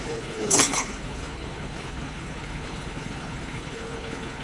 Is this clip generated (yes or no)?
yes